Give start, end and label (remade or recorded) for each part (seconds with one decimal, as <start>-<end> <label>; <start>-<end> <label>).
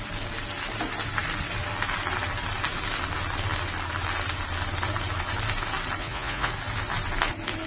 0.0-6.0 recorded; 6.0-6.5 remade; 6.5-7.7 recorded